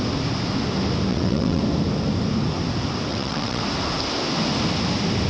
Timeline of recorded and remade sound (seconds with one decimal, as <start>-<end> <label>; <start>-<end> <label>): 0.0-1.1 recorded; 1.1-1.6 remade; 1.6-3.1 recorded; 3.1-3.6 remade; 3.6-5.3 recorded